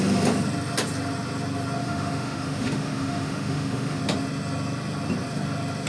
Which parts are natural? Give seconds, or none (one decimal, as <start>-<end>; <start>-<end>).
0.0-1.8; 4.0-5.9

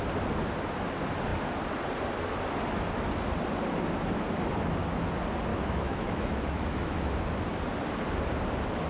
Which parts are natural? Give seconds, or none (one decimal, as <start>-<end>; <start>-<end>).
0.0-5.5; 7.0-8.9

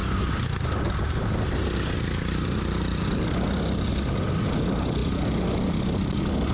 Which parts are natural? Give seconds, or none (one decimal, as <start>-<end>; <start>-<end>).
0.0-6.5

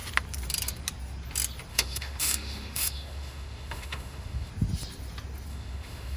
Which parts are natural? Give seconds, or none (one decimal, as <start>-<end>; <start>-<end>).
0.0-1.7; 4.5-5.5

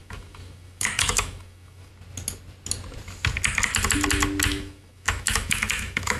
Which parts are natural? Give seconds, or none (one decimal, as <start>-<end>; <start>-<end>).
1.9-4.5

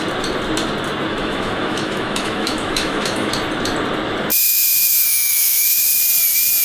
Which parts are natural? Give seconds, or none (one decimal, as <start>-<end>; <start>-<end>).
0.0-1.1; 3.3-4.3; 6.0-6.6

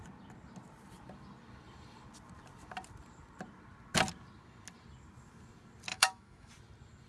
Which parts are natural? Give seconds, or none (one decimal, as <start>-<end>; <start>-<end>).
0.0-5.9; 6.5-7.1

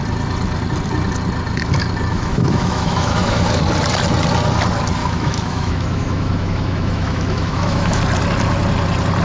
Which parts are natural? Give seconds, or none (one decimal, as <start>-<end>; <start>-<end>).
0.0-2.1; 3.4-5.0; 8.0-9.2